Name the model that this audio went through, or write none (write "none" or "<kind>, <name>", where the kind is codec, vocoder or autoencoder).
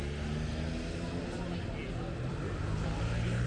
none